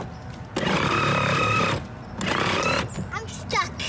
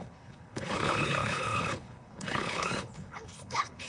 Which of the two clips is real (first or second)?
first